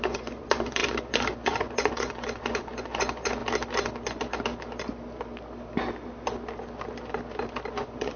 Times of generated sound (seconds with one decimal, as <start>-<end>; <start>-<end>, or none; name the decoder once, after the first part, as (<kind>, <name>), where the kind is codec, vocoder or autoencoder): 0.0-3.4 (vocoder, Vocos); 7.7-8.2